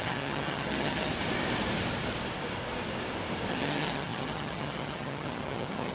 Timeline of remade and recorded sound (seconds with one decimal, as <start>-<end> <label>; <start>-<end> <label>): 0.0-1.1 remade; 1.1-3.5 recorded; 3.5-5.9 remade

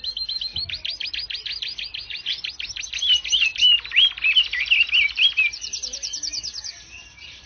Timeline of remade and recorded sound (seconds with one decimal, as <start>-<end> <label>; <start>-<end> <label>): 0.0-7.5 recorded